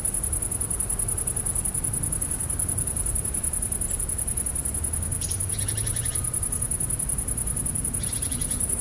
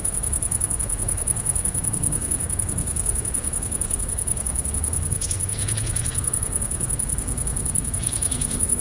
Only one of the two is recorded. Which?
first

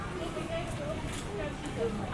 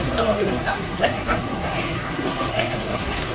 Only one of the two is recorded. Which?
first